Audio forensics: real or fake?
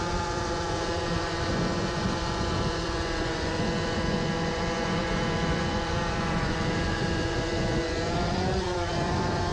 fake